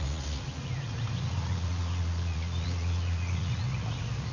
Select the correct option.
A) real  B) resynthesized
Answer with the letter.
B